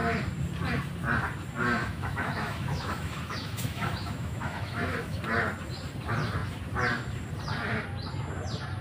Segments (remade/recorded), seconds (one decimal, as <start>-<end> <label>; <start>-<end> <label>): 0.0-1.8 recorded; 1.8-5.2 remade; 5.2-8.8 recorded